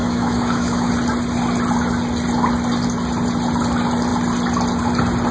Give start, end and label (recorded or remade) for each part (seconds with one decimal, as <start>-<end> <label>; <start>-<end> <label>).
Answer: 0.0-0.9 remade; 0.9-5.3 recorded